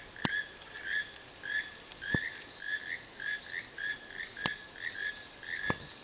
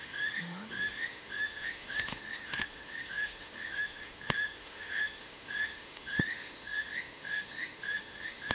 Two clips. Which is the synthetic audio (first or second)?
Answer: second